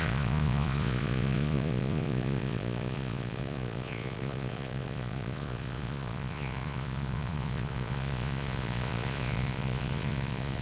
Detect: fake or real fake